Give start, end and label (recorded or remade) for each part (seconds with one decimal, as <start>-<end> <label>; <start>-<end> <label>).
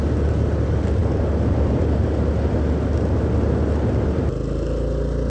0.0-5.3 recorded